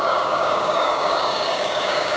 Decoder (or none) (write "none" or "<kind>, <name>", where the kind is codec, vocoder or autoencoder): codec, DAC